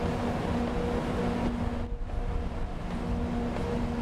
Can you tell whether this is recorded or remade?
recorded